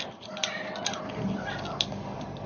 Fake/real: real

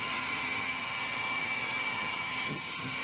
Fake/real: fake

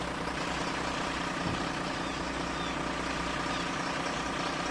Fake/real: real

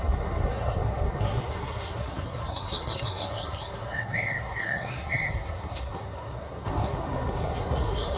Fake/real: fake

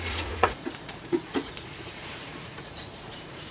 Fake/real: fake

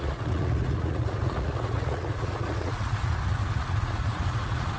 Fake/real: fake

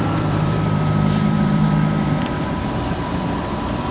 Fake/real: fake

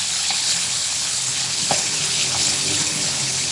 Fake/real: fake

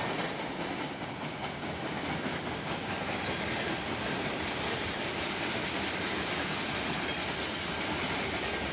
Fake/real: real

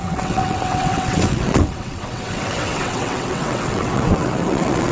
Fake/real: fake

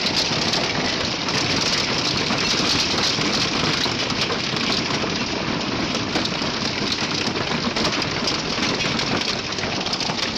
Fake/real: real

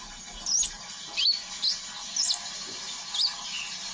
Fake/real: real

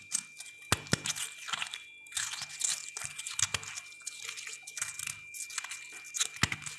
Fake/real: real